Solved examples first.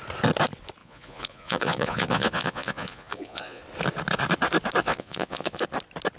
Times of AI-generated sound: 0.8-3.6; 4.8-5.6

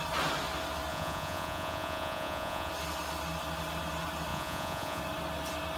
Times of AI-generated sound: 0.9-2.7; 4.3-5.0

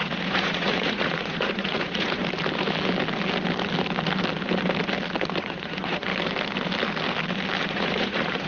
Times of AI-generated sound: 0.0-2.2; 5.4-6.1; 7.6-8.5